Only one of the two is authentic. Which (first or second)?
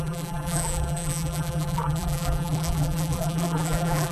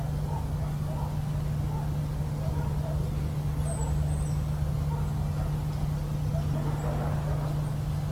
second